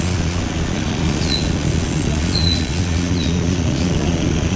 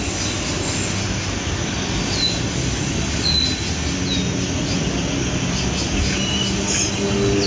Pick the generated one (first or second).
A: first